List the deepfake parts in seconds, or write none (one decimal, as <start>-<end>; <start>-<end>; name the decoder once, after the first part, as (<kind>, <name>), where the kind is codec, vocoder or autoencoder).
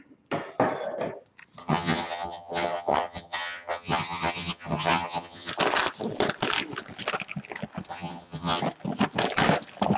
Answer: 1.6-5.5 (vocoder, HiFi-GAN); 7.9-8.6